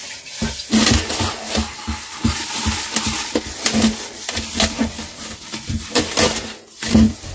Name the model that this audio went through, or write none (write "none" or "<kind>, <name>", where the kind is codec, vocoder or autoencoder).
none